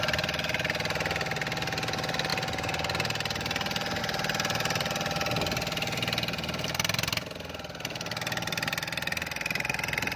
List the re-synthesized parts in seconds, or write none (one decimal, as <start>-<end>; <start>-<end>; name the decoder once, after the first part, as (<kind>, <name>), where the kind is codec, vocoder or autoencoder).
none